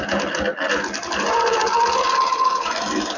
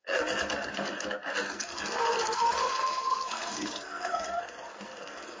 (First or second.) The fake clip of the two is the second